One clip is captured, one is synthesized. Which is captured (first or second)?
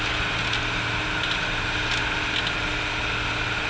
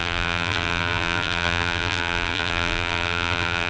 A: first